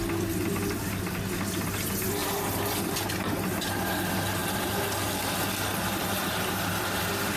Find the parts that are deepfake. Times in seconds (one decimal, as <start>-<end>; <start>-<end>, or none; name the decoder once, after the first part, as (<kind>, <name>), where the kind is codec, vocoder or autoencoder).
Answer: 2.2-3.1 (vocoder, BigVGAN v2)